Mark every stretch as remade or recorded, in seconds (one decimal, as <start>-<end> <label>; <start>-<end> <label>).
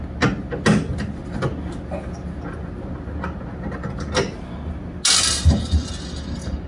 0.0-6.7 recorded